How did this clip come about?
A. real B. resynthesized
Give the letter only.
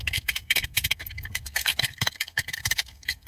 B